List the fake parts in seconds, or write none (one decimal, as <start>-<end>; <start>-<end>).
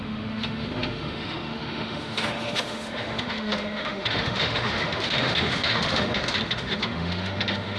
0.0-7.8